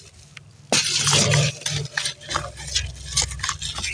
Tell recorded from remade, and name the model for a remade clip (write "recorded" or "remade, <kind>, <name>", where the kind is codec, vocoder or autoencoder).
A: recorded